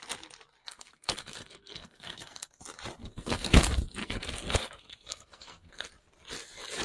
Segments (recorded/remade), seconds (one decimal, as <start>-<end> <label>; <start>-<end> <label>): 0.0-0.6 recorded; 0.6-2.6 remade; 2.6-3.0 recorded; 3.0-3.6 remade; 3.6-4.0 recorded; 4.0-5.9 remade; 5.9-6.8 recorded